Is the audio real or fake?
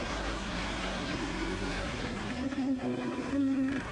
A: fake